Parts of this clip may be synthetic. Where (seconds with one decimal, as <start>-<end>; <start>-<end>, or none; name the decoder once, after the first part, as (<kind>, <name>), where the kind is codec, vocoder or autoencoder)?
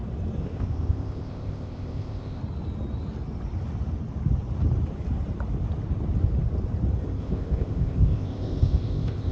0.4-2.4 (codec, ZipCodec); 7.2-9.3